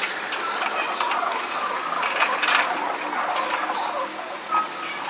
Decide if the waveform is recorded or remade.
recorded